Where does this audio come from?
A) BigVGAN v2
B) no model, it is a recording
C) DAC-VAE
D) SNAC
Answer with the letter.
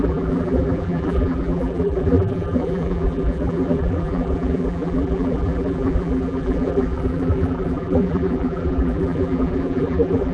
A